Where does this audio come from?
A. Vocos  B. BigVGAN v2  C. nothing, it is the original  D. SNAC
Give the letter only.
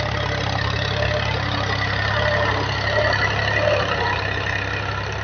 C